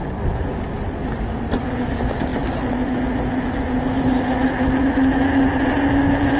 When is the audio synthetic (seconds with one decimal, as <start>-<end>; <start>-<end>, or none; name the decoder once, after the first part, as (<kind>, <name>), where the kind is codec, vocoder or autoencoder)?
none